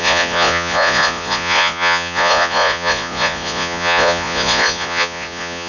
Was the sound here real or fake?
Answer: fake